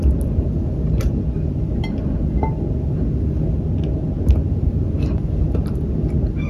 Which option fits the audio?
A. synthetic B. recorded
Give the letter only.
B